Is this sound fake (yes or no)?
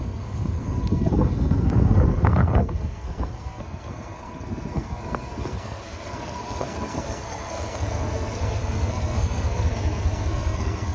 yes